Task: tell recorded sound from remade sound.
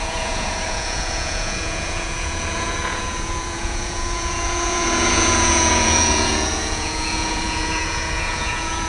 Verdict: remade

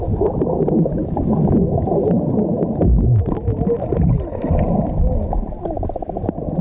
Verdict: recorded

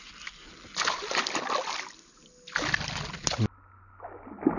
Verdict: recorded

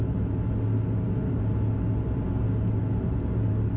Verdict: recorded